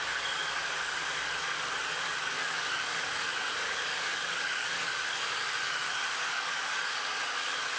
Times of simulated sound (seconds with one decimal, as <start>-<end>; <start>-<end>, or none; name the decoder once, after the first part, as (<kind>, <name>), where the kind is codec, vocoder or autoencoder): 0.0-7.8 (codec, DAC)